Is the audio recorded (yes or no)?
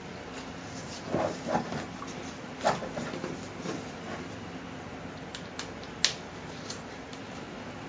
yes